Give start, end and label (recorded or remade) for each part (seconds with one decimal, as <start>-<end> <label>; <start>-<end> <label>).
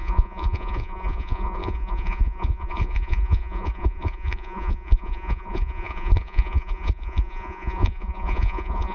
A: 0.0-8.9 remade